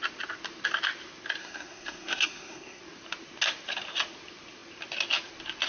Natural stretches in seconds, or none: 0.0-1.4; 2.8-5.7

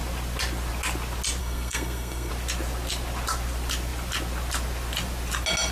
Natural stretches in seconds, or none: 0.0-1.4; 2.3-5.7

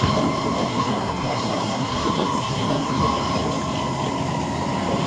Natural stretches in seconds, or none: 0.0-0.7; 3.0-5.1

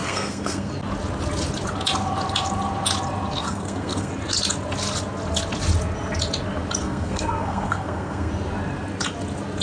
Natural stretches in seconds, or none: 0.7-3.4; 4.1-6.8; 8.3-9.6

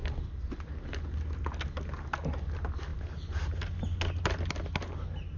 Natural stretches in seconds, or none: 0.0-5.4